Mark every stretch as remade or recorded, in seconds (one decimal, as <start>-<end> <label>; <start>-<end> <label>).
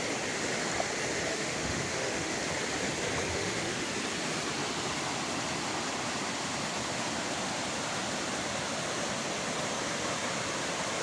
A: 0.0-1.3 recorded; 1.3-2.4 remade; 2.4-3.3 recorded; 3.3-3.9 remade; 3.9-11.0 recorded